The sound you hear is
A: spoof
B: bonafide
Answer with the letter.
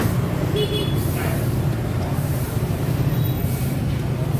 B